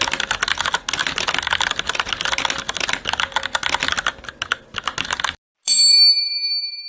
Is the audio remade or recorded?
recorded